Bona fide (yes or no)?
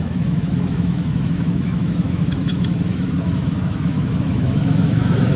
no